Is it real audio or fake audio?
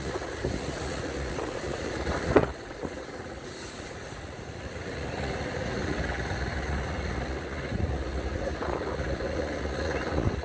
fake